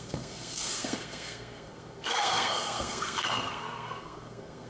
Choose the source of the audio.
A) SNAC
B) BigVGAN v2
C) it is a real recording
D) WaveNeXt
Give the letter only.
A